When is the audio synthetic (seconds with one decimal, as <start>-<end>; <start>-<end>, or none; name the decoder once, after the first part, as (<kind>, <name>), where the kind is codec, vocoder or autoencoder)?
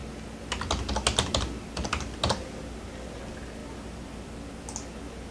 3.6-4.3 (vocoder, BigVGAN v2)